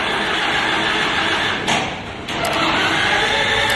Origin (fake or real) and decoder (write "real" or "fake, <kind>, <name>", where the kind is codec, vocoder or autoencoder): real